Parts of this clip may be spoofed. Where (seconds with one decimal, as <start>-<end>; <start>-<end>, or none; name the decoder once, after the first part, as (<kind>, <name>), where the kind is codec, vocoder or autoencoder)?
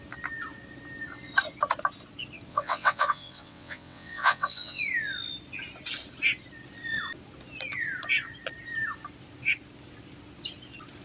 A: 2.5-4.8 (vocoder, WaveNeXt)